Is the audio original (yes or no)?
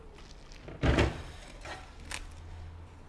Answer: yes